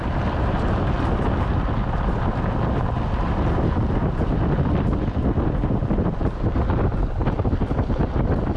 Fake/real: real